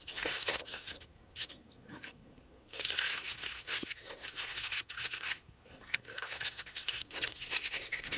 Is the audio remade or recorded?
remade